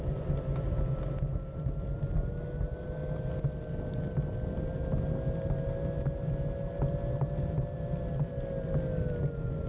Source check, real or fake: real